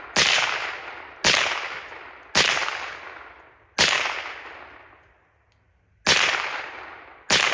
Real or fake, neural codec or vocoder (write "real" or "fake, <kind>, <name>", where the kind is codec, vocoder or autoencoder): real